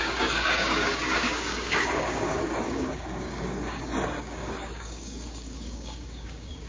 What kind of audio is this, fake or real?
fake